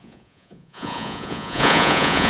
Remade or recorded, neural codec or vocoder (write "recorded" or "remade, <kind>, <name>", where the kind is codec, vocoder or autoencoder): remade, vocoder, Vocos